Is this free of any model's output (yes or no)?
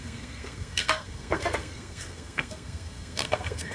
no